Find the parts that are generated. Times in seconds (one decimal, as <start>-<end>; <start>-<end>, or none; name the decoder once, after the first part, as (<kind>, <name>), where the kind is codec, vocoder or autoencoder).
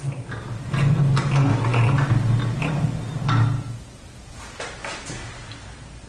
none